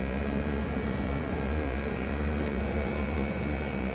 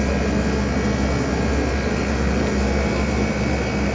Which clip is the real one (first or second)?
second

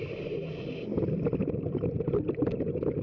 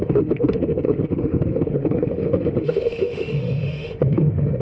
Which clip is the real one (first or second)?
first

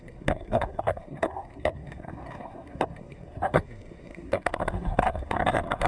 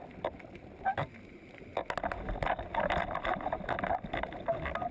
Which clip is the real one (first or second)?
second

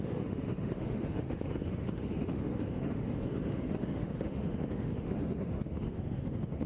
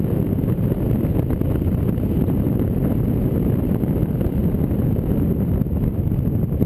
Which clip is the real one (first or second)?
second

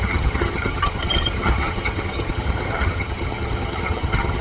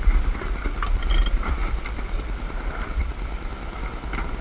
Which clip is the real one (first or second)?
second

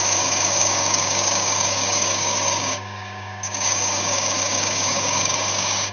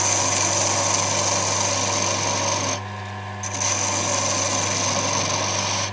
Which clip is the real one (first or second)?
second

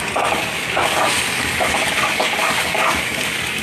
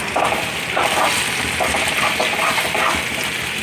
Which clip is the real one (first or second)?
second